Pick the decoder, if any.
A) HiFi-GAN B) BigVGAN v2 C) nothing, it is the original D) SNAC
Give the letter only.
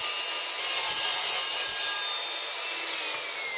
C